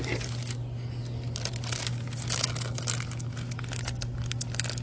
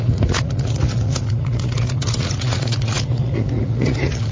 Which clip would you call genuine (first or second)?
first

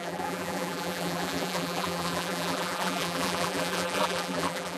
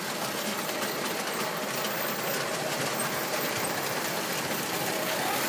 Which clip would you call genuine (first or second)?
second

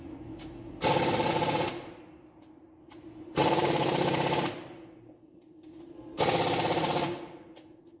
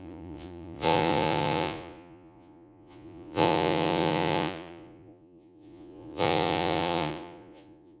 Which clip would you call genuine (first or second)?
first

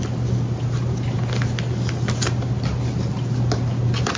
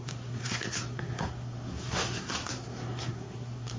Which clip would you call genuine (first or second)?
first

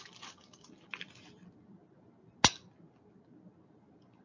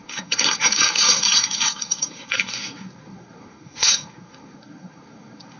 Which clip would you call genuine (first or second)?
first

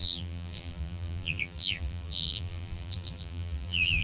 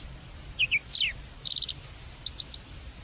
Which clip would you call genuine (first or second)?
second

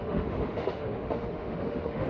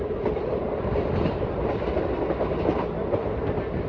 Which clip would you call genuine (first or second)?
second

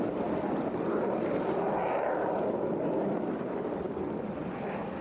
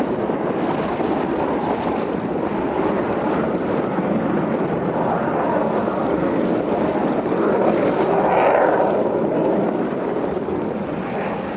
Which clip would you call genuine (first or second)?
second